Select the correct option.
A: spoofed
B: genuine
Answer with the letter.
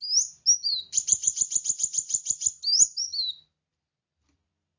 B